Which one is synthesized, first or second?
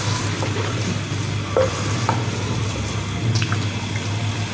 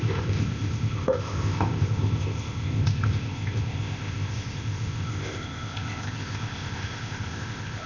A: second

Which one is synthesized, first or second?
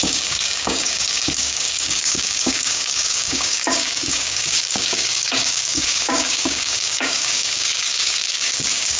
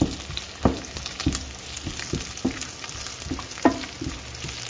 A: first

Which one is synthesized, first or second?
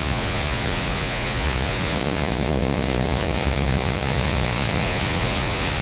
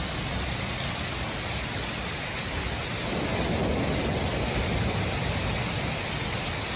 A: first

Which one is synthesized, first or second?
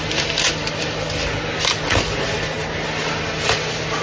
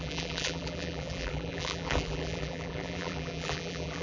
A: second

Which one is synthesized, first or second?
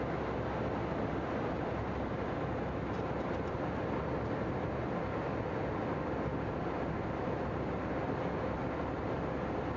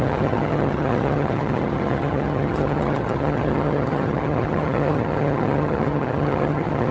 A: second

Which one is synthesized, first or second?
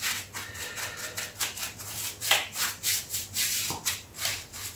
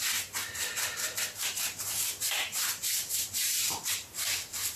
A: second